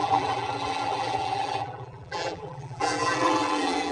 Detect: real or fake fake